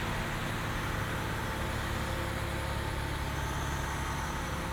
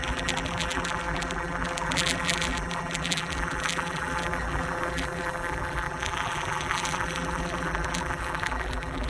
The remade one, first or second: second